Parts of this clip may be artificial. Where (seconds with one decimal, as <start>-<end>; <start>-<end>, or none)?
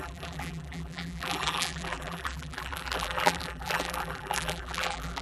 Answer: 0.0-5.2